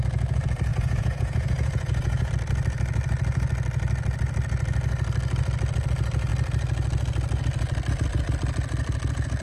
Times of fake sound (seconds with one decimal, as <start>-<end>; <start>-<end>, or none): 0.7-2.3